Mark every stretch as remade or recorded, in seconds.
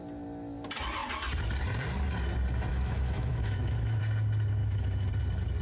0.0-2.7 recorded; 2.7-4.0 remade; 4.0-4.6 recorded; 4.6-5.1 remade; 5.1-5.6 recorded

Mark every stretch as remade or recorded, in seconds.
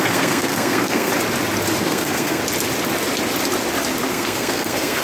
0.0-1.1 remade; 1.1-1.8 recorded; 1.8-2.4 remade; 2.4-4.1 recorded; 4.1-5.0 remade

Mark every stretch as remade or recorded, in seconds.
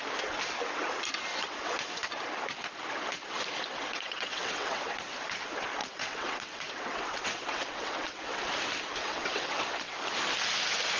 0.0-1.3 recorded; 1.3-2.1 remade; 2.1-3.7 recorded; 3.7-4.9 remade; 4.9-5.8 recorded; 5.8-8.4 remade; 8.4-9.0 recorded; 9.0-9.9 remade; 9.9-11.0 recorded